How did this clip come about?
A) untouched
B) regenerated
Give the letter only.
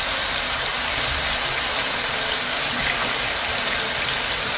A